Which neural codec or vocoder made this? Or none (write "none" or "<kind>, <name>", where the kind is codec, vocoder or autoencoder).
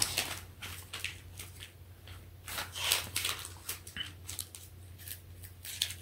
none